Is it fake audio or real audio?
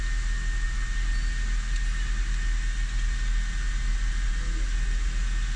real